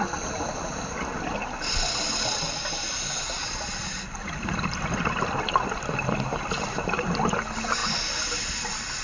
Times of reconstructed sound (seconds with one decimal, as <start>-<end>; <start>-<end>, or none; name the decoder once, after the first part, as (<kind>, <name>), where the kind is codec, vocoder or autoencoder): none